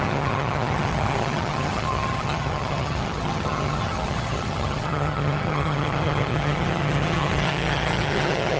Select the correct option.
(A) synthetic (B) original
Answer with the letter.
A